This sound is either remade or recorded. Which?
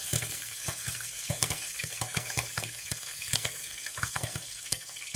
remade